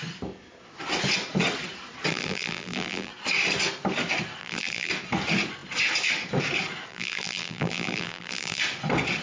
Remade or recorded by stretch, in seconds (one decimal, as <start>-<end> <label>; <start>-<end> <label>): 0.0-2.1 recorded; 2.1-3.1 remade; 3.1-4.4 recorded; 4.4-4.9 remade; 4.9-6.9 recorded; 6.9-8.6 remade; 8.6-9.2 recorded